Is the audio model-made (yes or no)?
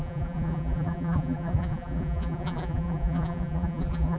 yes